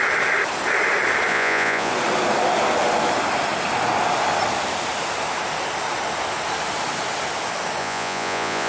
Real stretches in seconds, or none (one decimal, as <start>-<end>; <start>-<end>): 0.0-1.3; 1.9-7.8